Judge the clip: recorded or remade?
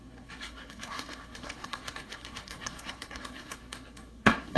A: remade